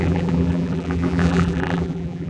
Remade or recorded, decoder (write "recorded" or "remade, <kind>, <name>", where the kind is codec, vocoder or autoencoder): remade, vocoder, BigVGAN v2